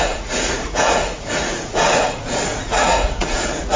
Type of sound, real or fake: fake